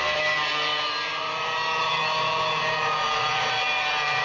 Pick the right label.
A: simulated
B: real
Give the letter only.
A